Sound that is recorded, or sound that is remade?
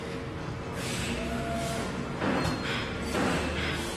recorded